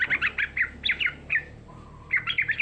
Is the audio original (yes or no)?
yes